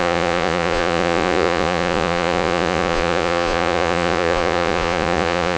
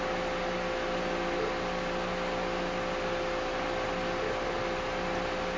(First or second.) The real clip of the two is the second